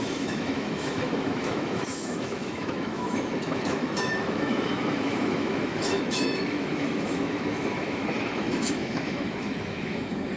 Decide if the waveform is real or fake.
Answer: fake